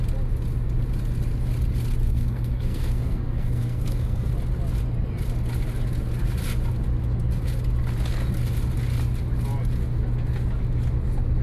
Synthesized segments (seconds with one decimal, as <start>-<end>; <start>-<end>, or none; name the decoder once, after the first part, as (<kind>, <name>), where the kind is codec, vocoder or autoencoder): 2.0-4.3 (codec, SNAC)